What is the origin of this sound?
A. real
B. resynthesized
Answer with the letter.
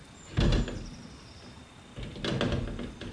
A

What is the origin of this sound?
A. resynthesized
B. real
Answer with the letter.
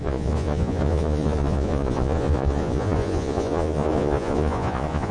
A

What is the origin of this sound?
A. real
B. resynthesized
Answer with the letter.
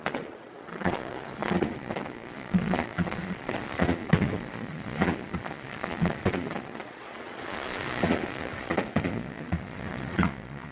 B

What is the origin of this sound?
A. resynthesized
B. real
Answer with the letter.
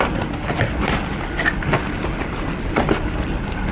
B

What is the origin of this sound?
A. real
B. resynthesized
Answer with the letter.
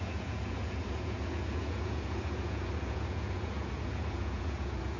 B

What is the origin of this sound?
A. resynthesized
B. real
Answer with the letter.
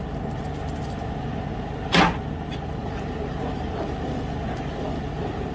B